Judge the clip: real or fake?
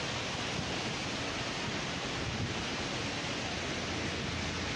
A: real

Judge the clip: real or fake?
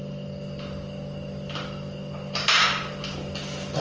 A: real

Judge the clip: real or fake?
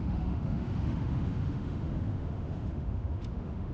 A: fake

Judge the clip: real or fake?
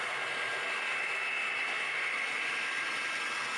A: real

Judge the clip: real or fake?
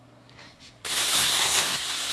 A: fake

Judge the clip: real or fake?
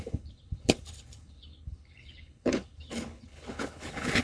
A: fake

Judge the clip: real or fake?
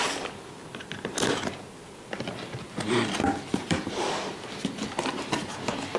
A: real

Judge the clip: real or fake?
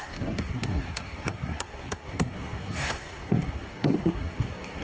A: fake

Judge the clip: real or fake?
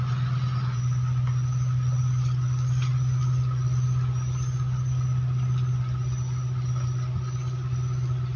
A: real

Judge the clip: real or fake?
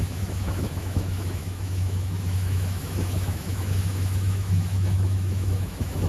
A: fake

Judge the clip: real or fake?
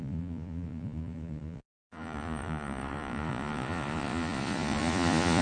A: fake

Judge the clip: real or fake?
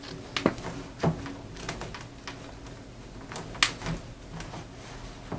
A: real